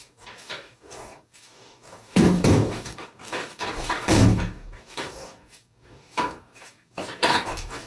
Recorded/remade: remade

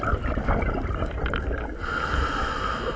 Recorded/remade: recorded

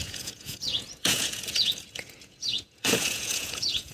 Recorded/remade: remade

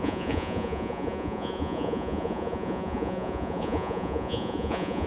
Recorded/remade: remade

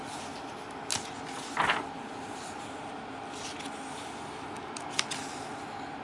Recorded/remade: recorded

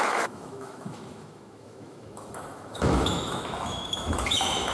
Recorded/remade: remade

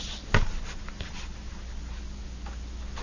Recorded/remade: recorded